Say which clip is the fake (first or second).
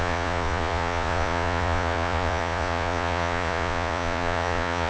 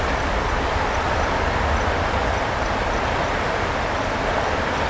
first